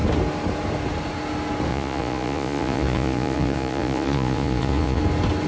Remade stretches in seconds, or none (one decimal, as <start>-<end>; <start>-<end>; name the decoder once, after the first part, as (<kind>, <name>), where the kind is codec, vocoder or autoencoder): 1.7-5.0 (vocoder, Vocos)